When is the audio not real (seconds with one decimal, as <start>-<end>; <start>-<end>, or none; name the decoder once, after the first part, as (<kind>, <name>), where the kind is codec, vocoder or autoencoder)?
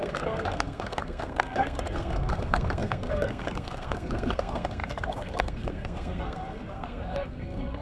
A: 0.0-7.8 (codec, SNAC)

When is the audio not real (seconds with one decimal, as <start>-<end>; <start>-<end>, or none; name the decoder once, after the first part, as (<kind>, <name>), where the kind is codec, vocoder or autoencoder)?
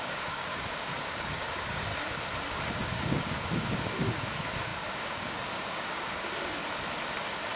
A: 0.0-1.9 (codec, DAC); 2.7-6.6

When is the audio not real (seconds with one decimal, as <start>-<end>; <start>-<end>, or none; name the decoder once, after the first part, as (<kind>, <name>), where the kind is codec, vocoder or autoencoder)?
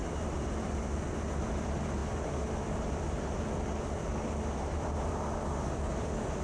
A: 0.0-6.4 (vocoder, BigVGAN v2)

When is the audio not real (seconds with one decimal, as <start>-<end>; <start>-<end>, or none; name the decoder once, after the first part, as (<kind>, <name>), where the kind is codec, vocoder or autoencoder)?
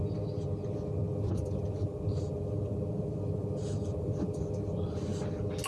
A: 1.1-4.5 (vocoder, BigVGAN v2)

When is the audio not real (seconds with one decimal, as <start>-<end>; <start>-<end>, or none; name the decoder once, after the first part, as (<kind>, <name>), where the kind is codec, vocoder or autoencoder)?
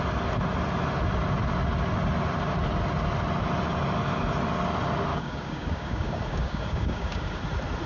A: 5.1-7.4 (codec, DAC)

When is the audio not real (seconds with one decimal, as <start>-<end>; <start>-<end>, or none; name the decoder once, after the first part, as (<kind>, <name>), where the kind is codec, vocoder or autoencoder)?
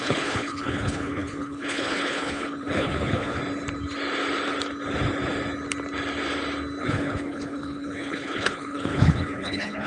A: 0.0-3.4 (codec, HILCodec); 6.8-9.9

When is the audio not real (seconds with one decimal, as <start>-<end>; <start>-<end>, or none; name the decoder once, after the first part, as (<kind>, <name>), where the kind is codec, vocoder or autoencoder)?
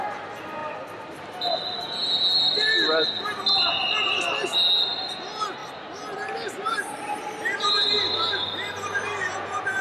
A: 0.6-1.3 (vocoder, BigVGAN v2)